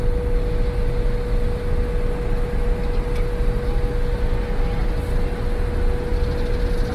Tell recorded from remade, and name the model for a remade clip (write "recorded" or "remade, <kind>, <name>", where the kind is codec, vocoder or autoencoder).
recorded